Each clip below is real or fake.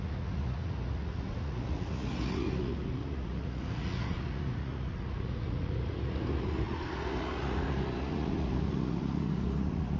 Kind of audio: fake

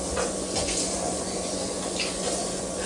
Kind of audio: fake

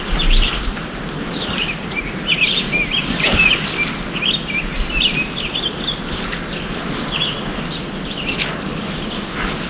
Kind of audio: real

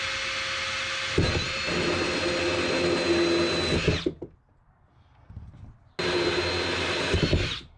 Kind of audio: real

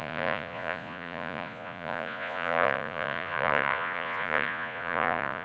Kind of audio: fake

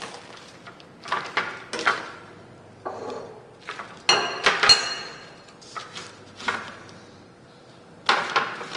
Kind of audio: real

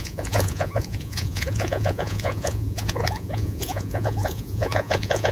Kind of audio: fake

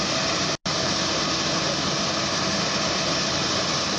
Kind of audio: real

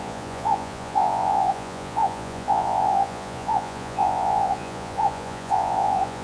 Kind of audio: fake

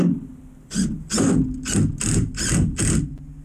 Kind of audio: real